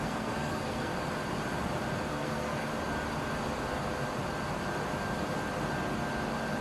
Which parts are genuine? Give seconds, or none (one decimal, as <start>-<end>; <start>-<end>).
0.9-2.1; 2.7-6.6